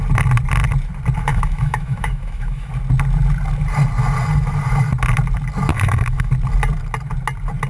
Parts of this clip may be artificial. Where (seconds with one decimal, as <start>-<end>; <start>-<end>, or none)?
1.3-2.7; 5.7-6.3